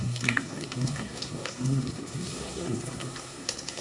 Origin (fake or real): fake